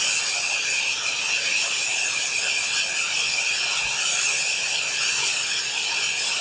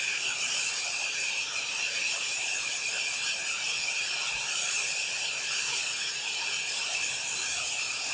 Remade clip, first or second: second